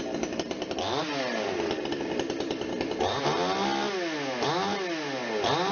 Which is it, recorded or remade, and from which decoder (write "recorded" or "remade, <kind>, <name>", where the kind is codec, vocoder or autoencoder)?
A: recorded